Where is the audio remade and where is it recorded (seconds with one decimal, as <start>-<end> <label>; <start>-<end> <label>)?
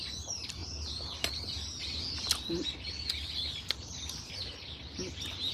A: 0.0-5.5 recorded